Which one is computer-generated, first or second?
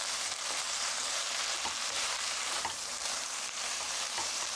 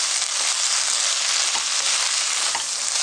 first